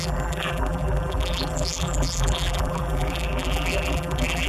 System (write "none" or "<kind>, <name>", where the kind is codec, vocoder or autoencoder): vocoder, BigVGAN v2